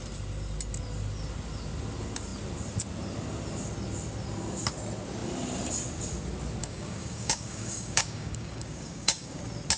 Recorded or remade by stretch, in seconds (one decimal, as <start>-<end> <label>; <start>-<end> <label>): 0.0-6.6 recorded; 6.6-9.4 remade; 9.4-9.8 recorded